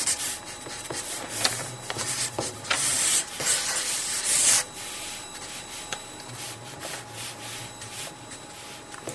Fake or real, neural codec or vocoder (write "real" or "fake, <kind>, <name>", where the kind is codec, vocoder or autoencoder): fake, vocoder, BigVGAN v2